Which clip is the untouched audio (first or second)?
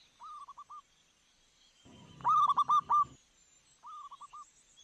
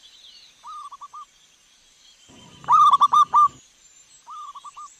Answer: first